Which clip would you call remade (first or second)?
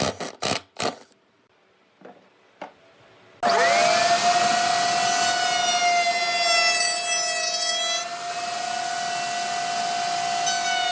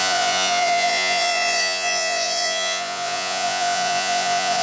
second